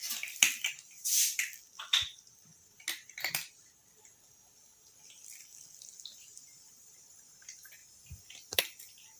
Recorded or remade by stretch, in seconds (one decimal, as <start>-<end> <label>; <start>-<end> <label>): 0.0-2.5 remade; 2.5-3.3 recorded; 3.3-5.5 remade; 5.5-6.7 recorded; 6.7-9.2 remade